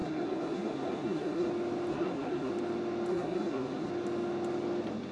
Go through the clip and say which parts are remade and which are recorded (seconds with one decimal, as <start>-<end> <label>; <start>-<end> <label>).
0.0-1.5 remade; 1.5-1.9 recorded; 1.9-2.5 remade; 2.5-3.1 recorded; 3.1-3.9 remade; 3.9-5.1 recorded